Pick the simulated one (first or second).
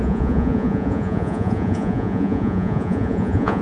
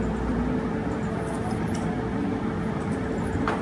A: first